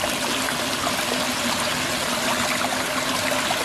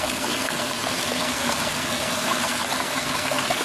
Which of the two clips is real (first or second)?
first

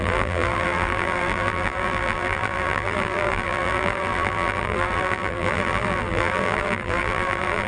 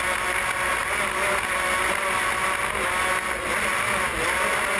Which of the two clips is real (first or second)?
second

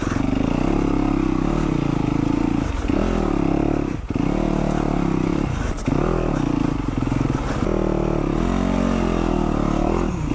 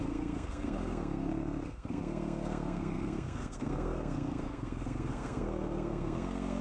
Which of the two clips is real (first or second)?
first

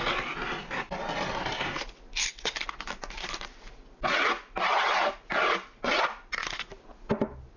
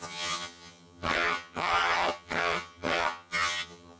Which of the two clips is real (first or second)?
first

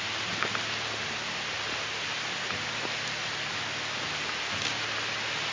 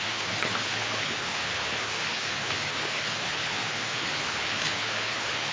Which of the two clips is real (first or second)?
first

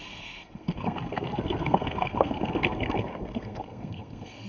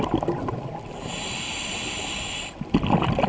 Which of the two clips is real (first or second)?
second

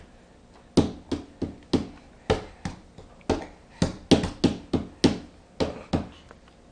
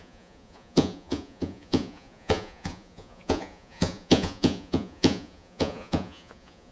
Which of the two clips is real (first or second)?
first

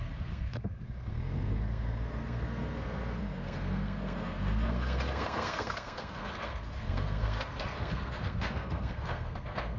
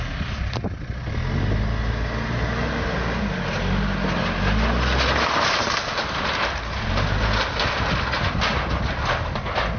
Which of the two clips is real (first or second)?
second